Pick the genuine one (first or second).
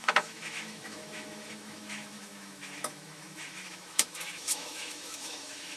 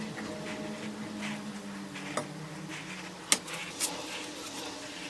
second